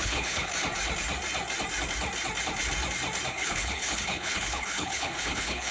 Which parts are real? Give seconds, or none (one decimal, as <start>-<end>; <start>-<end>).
0.5-3.3